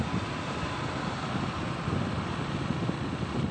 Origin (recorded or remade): recorded